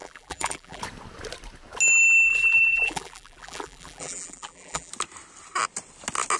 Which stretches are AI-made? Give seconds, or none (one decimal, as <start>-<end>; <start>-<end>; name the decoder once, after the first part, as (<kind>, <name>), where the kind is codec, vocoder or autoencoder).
0.0-0.8 (vocoder, BigVGAN v2); 2.3-4.9